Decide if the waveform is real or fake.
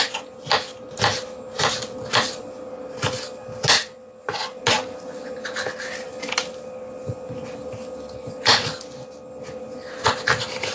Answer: real